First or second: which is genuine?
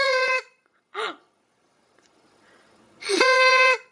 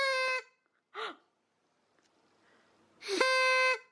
second